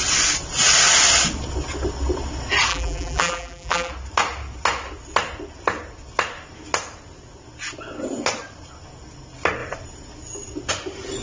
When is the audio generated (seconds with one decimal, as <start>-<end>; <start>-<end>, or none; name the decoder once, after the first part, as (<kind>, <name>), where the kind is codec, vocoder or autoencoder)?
2.7-3.9 (vocoder, BigVGAN v2)